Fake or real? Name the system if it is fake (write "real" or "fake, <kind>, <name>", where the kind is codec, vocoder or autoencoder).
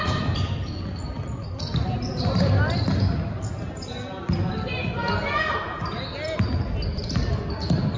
real